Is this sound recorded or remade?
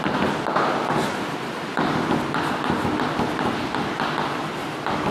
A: recorded